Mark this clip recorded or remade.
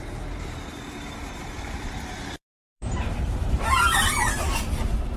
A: remade